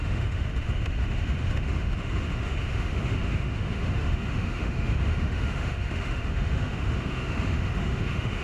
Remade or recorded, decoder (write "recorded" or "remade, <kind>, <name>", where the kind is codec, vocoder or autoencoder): remade, autoencoder, DAC-VAE